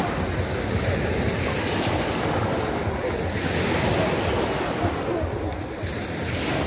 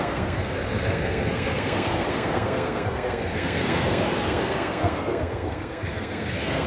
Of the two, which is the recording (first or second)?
first